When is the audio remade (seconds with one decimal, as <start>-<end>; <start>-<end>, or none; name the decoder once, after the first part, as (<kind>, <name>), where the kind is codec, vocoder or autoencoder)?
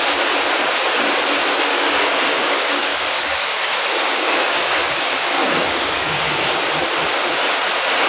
1.7-6.6 (codec, DAC); 7.1-7.6